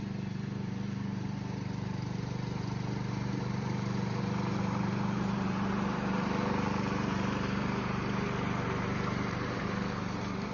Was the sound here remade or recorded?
remade